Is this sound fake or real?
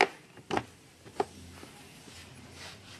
real